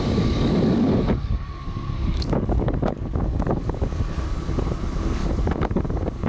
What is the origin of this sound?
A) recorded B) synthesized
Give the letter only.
B